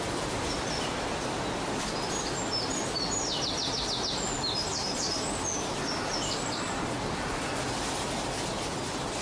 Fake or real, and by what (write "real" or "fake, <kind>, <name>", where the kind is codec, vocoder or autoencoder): real